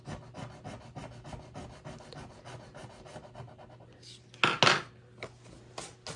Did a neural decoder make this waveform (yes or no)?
no